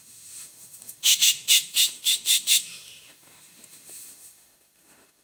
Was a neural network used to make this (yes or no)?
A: yes